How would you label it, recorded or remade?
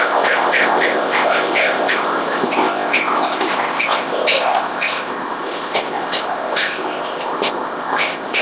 remade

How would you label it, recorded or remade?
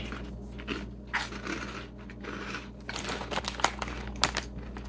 recorded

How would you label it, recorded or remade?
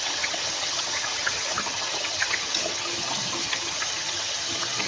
remade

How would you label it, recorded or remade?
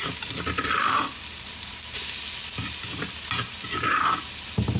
recorded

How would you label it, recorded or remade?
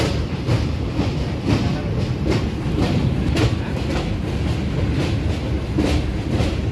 remade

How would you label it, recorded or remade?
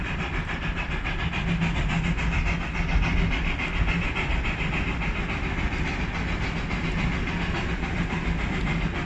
recorded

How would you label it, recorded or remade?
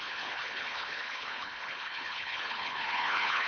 remade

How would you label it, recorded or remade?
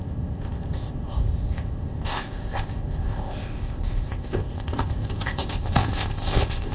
remade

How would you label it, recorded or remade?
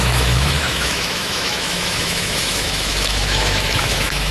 remade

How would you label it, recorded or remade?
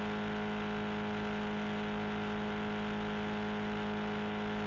recorded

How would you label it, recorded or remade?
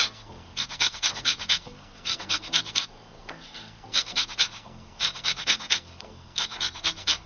remade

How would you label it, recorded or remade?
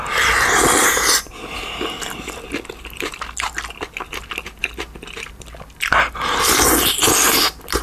recorded